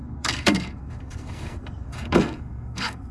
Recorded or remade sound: remade